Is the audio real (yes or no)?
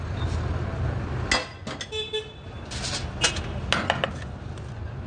yes